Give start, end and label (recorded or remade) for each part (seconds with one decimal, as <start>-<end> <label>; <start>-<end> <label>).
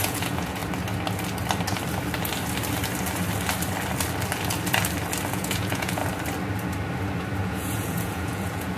0.0-0.6 remade; 0.6-5.3 recorded; 5.3-6.0 remade; 6.0-7.4 recorded; 7.4-8.8 remade